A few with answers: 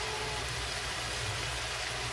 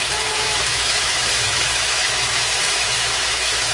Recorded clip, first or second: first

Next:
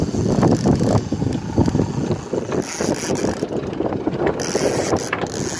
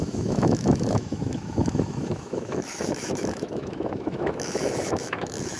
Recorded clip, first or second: first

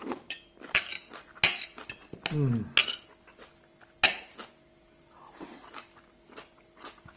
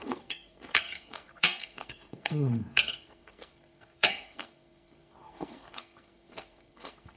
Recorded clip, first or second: first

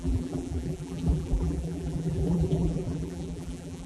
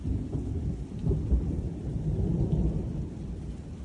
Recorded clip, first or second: second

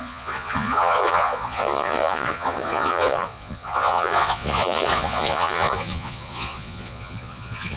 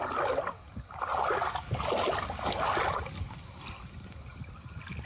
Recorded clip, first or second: second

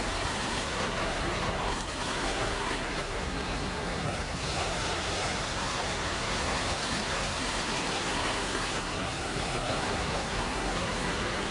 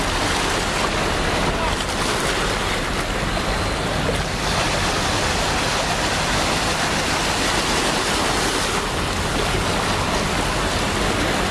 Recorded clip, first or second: second